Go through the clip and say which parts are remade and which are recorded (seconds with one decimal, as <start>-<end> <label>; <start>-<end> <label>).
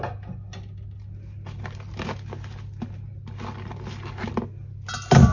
0.0-5.3 recorded